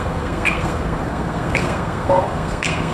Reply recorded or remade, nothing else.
remade